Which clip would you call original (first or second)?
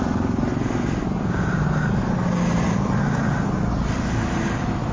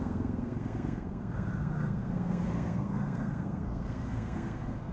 first